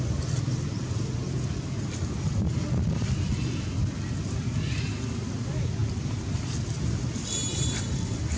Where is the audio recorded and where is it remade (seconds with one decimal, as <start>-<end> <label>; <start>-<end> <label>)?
0.0-8.4 recorded